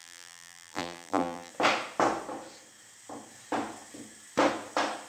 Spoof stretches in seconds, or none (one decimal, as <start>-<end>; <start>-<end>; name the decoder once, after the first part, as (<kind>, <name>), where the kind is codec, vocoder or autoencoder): 0.0-1.5 (vocoder, BigVGAN v2)